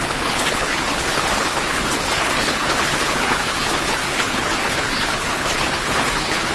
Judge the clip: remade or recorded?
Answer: remade